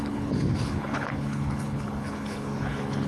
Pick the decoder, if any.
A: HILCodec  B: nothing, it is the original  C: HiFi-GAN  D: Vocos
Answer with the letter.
A